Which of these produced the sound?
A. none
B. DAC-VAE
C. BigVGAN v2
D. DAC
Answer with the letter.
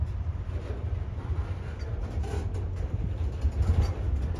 C